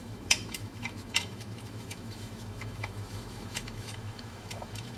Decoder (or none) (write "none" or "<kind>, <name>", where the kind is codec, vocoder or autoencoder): autoencoder, DAC-VAE